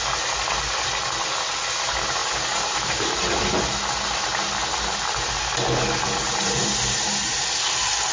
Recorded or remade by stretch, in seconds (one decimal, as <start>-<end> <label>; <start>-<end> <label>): 0.0-2.2 recorded; 2.2-3.4 remade; 3.4-6.6 recorded; 6.6-7.4 remade; 7.4-8.1 recorded